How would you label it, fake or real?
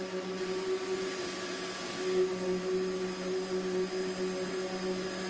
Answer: real